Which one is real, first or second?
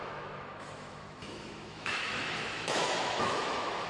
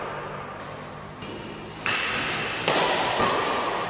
second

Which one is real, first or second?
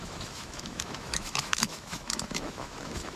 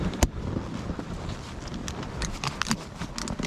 second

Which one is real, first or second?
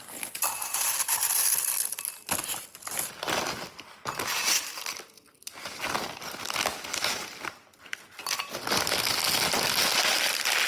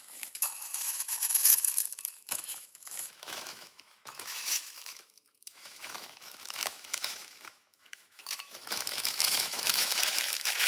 first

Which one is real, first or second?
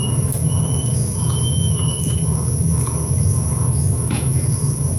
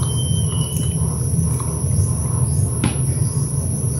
second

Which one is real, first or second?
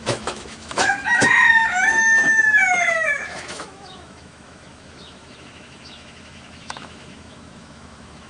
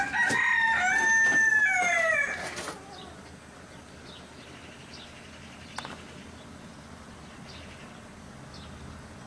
second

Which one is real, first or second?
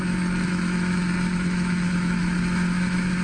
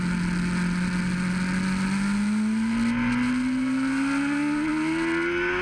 second